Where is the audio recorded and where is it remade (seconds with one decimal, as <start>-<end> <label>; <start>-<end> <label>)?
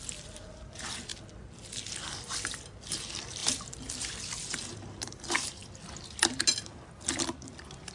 0.0-5.6 remade; 5.6-7.2 recorded; 7.2-7.9 remade